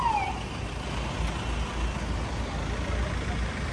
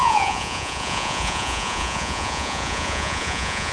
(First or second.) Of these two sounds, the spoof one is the second